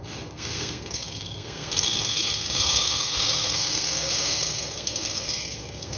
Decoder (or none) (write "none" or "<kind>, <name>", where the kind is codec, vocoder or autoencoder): codec, SNAC